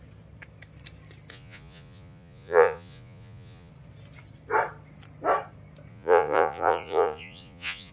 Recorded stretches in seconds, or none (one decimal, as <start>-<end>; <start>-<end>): 0.0-1.3; 3.7-5.9